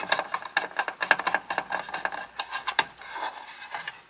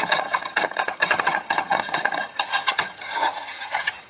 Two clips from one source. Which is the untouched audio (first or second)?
first